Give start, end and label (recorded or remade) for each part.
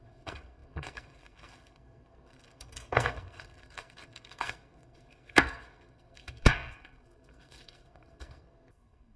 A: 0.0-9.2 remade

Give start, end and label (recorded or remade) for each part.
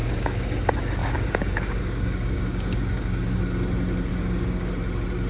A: 0.0-0.6 remade; 0.6-1.0 recorded; 1.0-3.4 remade; 3.4-4.1 recorded; 4.1-4.7 remade; 4.7-5.3 recorded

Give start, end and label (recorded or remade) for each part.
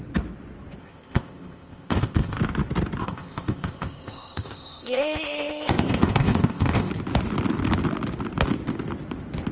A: 0.0-0.8 recorded; 0.8-2.4 remade; 2.4-3.0 recorded; 3.0-6.9 remade; 6.9-9.5 recorded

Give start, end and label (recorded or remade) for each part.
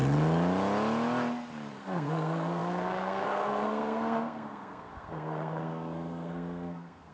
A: 0.0-1.7 recorded; 1.7-7.1 remade